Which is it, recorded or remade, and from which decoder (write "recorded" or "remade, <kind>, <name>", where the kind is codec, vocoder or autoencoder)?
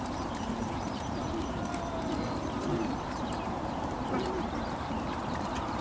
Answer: remade, vocoder, BigVGAN v2